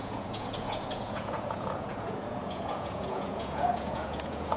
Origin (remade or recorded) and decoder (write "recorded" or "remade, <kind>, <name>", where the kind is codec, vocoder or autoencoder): remade, vocoder, Vocos